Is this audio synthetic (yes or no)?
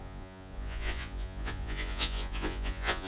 yes